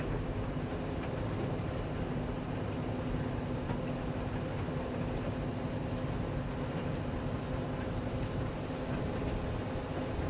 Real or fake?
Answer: real